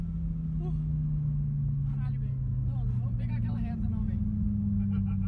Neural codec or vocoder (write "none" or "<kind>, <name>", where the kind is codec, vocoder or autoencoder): none